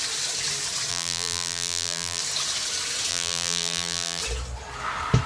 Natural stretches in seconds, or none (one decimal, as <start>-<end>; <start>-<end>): 0.0-0.9; 2.2-3.1; 4.2-5.3